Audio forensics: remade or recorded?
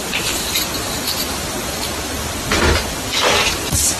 remade